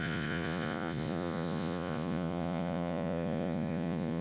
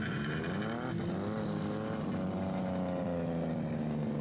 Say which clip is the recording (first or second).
second